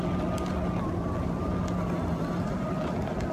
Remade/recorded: recorded